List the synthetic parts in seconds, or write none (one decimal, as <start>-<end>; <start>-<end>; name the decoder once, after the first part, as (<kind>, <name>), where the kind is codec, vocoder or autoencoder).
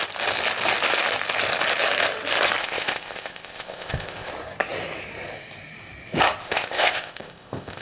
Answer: 2.6-4.3 (codec, ZipCodec); 6.4-7.8